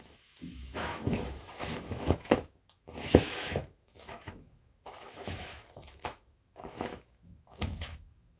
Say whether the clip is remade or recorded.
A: remade